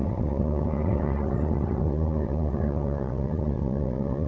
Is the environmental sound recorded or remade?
remade